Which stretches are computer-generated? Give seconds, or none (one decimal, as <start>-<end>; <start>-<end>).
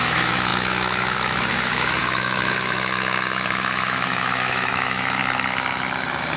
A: 0.0-5.2